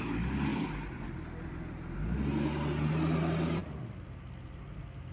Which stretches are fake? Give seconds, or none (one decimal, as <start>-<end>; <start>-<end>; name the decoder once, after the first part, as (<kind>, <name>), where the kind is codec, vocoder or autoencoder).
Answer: none